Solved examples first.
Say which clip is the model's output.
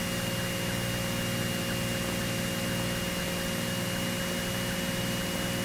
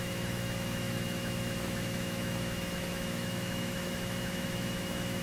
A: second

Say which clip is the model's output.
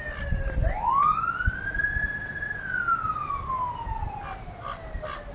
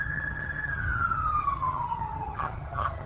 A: second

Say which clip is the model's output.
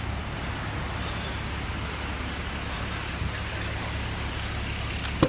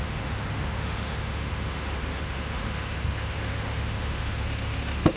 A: second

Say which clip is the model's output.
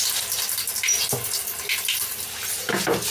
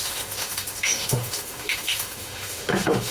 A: second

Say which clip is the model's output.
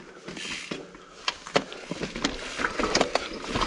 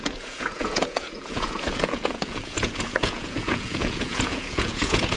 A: second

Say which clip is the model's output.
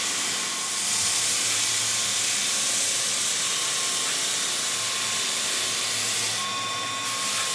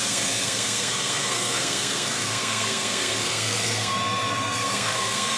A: second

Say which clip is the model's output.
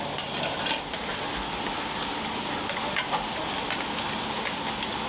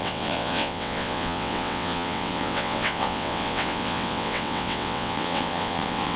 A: second